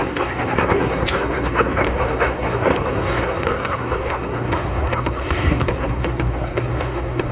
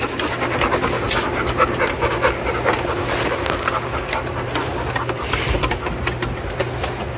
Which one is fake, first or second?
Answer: first